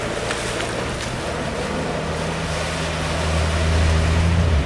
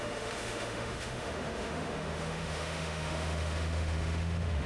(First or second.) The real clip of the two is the first